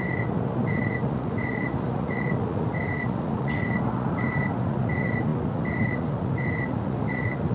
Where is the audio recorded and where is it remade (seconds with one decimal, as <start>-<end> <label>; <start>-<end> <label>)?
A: 0.0-7.5 remade